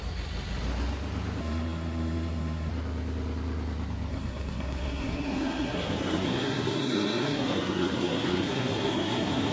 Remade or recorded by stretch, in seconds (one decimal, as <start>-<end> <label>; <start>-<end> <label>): 0.0-1.4 recorded; 1.4-2.7 remade; 2.7-4.1 recorded; 4.1-9.5 remade